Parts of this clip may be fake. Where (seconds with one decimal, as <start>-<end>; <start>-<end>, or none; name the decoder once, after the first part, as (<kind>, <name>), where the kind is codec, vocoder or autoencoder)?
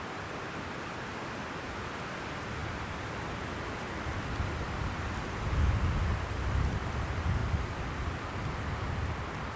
2.6-3.5 (vocoder, BigVGAN v2); 4.1-6.8; 7.4-8.5